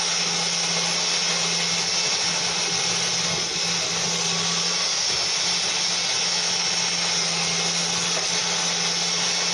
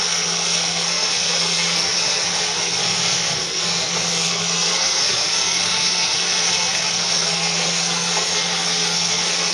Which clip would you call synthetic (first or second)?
second